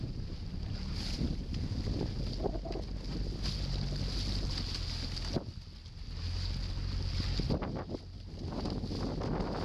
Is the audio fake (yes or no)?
no